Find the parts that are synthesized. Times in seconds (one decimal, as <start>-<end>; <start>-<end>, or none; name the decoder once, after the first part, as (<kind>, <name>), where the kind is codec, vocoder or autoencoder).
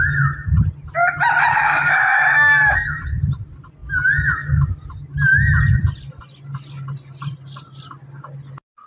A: 1.5-3.0 (codec, DAC)